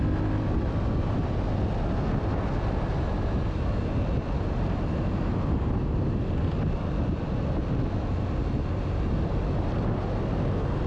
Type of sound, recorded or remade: recorded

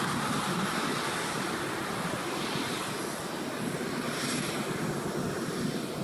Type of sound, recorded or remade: recorded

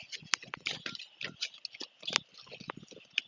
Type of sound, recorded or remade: recorded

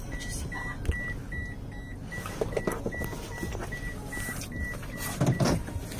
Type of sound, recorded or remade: recorded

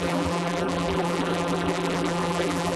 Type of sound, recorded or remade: remade